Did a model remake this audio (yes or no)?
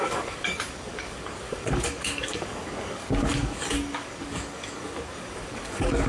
yes